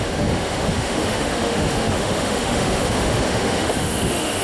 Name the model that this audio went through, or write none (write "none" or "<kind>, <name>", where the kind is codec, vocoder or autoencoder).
autoencoder, DAC-VAE